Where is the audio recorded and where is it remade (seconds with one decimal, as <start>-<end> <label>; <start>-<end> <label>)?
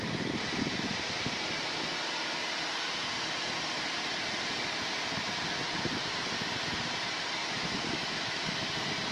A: 0.0-7.4 recorded; 7.4-8.7 remade; 8.7-9.1 recorded